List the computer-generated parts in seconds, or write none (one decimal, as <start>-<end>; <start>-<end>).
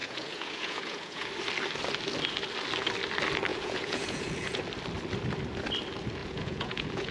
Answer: 0.0-1.3; 3.5-4.6; 6.2-7.1